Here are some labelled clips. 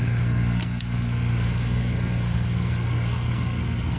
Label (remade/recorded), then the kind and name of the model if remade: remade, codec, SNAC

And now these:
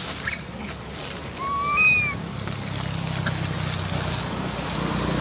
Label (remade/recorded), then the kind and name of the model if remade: recorded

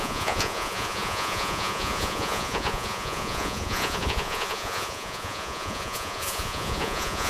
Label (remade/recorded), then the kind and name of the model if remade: remade, vocoder, Vocos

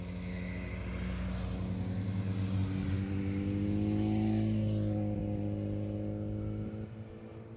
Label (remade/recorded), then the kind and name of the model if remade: recorded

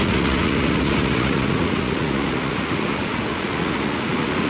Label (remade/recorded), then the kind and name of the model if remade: remade, vocoder, Vocos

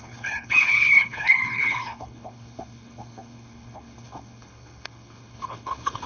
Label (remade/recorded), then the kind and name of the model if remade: remade, codec, HILCodec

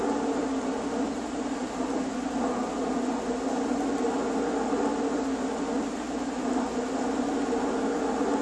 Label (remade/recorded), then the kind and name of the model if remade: recorded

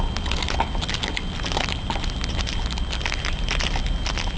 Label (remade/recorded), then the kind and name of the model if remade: recorded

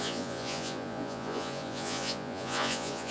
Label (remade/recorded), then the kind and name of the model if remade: remade, vocoder, Vocos